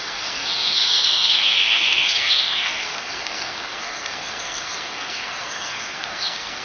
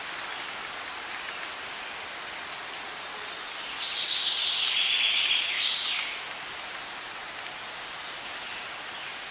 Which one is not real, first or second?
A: first